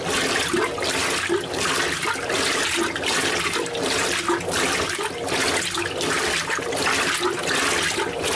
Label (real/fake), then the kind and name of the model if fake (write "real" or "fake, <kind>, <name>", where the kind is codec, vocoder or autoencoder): real